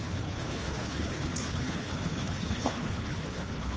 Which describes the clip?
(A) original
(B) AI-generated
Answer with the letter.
B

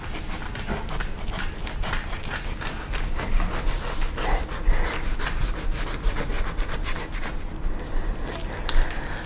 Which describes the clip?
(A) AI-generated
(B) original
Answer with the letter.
B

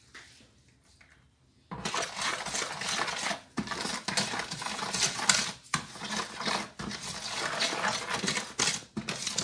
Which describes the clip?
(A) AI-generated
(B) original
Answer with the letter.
B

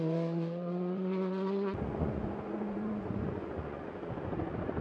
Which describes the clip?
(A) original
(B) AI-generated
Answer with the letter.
B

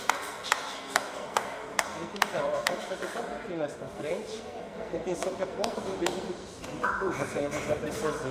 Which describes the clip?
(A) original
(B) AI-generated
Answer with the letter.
B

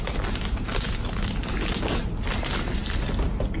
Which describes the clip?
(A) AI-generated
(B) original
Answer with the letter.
B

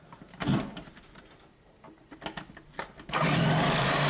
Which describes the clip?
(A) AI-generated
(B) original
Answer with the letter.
B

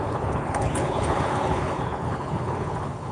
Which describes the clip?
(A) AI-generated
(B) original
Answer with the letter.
A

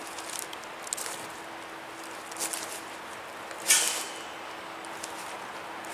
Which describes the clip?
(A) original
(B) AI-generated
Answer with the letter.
A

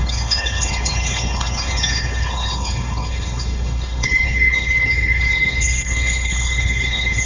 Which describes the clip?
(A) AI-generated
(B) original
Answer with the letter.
A